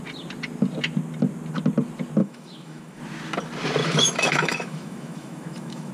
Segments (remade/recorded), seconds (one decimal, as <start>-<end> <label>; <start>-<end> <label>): 0.0-2.2 recorded; 2.2-3.0 remade; 3.0-3.8 recorded; 3.8-5.9 remade